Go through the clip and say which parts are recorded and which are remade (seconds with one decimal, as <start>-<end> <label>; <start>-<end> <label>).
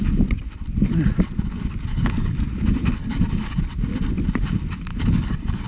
0.0-1.9 recorded; 1.9-2.4 remade; 2.4-3.0 recorded; 3.0-3.6 remade; 3.6-4.9 recorded; 4.9-5.7 remade